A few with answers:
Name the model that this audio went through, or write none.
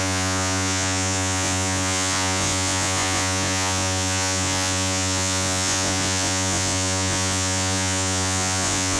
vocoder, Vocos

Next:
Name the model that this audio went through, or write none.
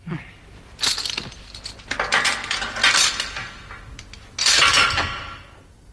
none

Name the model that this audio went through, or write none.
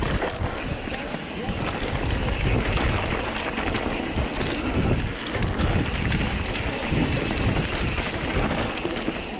none